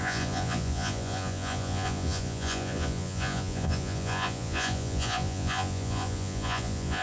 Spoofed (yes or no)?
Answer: yes